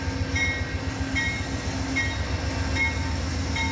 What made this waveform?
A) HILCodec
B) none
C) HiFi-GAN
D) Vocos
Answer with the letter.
B